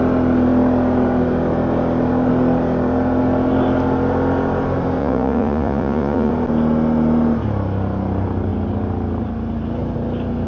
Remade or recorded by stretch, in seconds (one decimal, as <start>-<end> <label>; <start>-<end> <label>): 0.0-5.0 recorded; 5.0-6.3 remade; 6.3-10.5 recorded